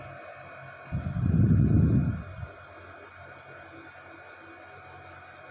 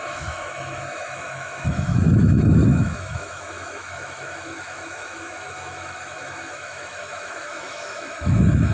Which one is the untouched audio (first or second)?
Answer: first